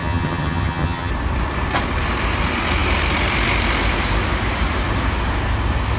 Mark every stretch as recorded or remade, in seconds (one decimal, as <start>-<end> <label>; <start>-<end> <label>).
0.0-1.1 remade; 1.1-6.0 recorded